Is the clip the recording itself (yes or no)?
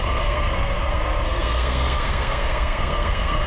no